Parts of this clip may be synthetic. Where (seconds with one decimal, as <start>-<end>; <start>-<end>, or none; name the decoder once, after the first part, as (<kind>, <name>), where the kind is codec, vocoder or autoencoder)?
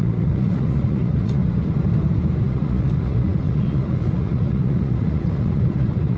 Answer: 0.0-1.4 (vocoder, Vocos); 2.4-6.2